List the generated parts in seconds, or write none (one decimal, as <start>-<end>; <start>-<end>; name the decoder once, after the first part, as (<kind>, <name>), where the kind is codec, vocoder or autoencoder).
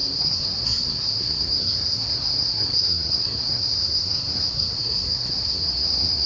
0.0-6.3 (codec, SNAC)